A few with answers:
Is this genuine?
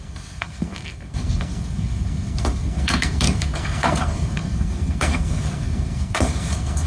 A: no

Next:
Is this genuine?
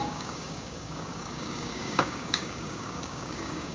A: no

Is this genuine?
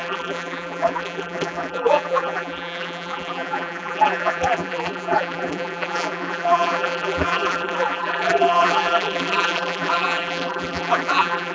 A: no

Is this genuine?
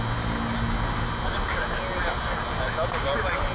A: yes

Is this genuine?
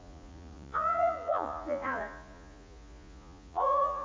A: no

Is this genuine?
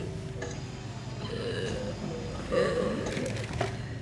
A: yes